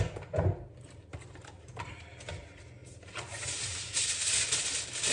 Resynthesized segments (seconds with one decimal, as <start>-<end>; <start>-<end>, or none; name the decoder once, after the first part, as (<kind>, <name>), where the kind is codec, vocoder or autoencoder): 1.1-2.0 (vocoder, BigVGAN v2); 2.8-4.1